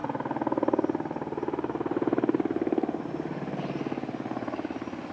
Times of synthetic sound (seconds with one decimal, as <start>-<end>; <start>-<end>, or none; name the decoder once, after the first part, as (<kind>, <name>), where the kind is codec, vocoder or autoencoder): 0.0-3.1 (vocoder, BigVGAN v2)